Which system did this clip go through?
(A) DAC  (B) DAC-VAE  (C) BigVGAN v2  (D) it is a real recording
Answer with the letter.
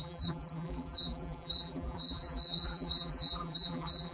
C